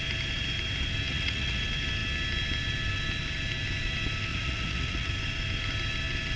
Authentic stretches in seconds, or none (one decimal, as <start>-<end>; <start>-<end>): 0.0-1.1; 1.6-4.3; 5.1-6.4